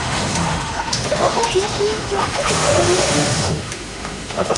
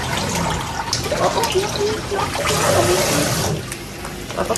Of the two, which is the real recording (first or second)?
second